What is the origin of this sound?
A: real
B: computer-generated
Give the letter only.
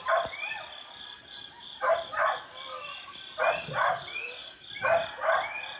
A